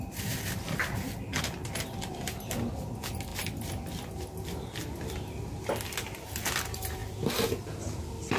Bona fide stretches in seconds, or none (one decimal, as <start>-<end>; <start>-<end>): 0.0-8.4